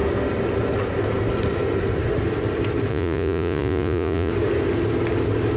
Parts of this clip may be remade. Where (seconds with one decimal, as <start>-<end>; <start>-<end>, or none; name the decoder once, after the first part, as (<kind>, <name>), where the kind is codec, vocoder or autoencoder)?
2.9-4.3 (vocoder, Vocos)